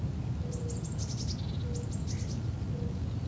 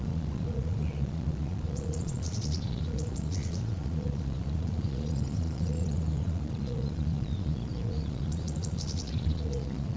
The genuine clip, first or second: first